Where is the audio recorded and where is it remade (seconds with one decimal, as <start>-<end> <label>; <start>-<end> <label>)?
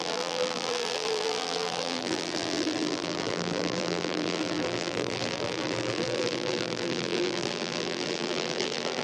0.0-9.0 remade